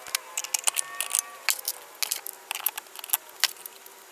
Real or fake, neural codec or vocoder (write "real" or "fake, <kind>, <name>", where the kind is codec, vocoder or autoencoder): real